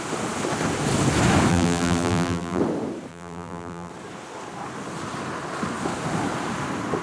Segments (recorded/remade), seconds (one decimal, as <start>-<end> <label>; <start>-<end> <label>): 0.0-1.5 recorded; 1.5-2.6 remade; 2.6-3.1 recorded; 3.1-3.9 remade; 3.9-7.0 recorded